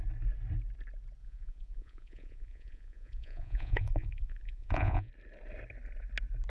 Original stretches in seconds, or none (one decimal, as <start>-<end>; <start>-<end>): 0.0-1.2; 5.1-6.5